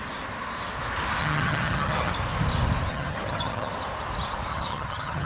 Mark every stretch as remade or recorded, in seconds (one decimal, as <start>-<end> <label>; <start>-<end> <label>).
0.0-1.2 recorded; 1.2-2.1 remade; 2.1-2.9 recorded; 2.9-3.7 remade; 3.7-4.5 recorded; 4.5-5.3 remade